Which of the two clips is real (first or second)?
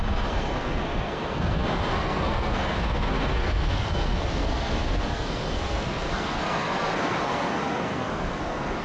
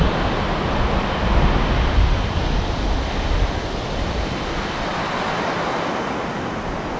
second